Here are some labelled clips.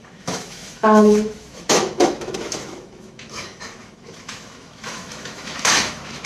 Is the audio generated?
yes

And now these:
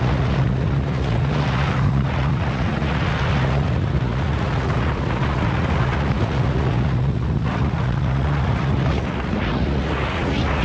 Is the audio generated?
yes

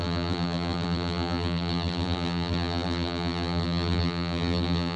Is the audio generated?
yes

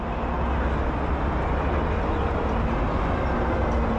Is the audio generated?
no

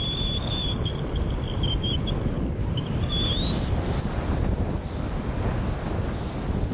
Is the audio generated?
no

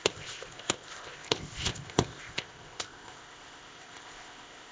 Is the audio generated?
yes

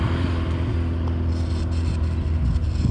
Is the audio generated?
no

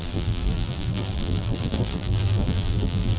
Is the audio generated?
yes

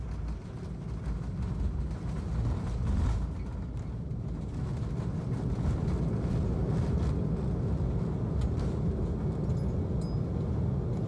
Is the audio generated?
no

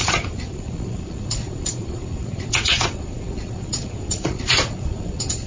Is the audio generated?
yes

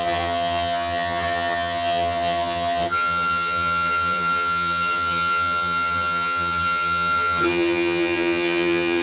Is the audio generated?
yes